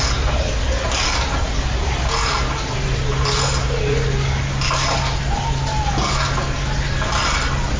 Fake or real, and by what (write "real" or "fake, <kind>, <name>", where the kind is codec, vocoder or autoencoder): real